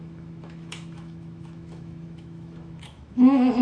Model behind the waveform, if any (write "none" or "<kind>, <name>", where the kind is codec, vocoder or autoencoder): autoencoder, DAC-VAE